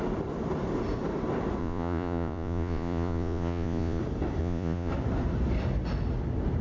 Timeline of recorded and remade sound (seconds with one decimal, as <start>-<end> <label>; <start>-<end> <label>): 0.0-1.6 recorded; 1.6-4.0 remade; 4.0-4.4 recorded; 4.4-4.9 remade; 4.9-6.6 recorded